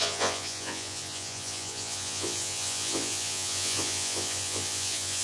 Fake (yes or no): yes